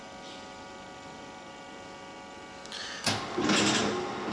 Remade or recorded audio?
recorded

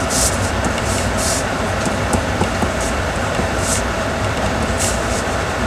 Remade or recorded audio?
remade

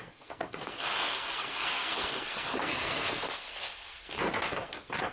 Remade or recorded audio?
remade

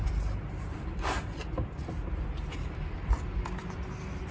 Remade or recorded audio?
remade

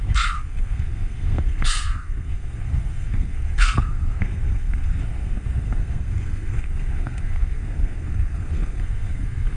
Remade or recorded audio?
remade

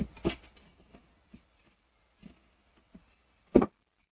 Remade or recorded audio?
recorded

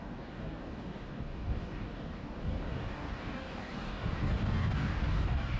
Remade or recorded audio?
remade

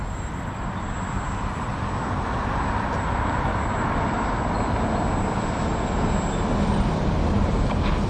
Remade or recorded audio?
recorded